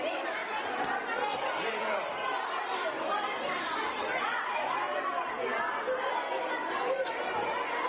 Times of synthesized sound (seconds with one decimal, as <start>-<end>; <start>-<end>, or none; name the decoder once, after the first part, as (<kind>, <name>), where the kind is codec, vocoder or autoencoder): 0.4-5.0 (vocoder, BigVGAN v2)